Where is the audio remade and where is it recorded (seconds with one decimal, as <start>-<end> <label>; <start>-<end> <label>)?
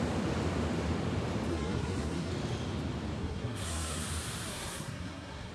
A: 0.0-1.5 recorded; 1.5-2.3 remade; 2.3-3.2 recorded; 3.2-4.0 remade; 4.0-4.5 recorded; 4.5-5.5 remade